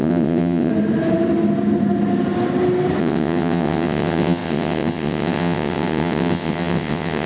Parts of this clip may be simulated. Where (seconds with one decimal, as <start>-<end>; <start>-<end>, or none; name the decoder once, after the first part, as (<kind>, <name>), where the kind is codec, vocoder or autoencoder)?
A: 0.0-0.7 (vocoder, WaveNeXt); 3.0-7.3